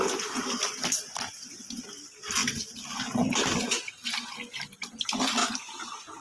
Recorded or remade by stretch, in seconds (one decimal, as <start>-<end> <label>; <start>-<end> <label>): 0.0-6.2 remade